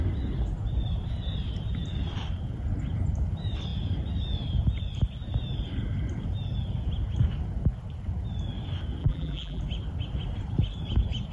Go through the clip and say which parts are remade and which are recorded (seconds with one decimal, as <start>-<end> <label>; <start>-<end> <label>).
0.0-9.0 recorded; 9.0-9.6 remade; 9.6-11.3 recorded